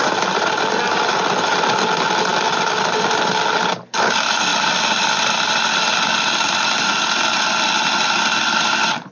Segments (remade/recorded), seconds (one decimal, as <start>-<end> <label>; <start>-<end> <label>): 0.0-9.1 recorded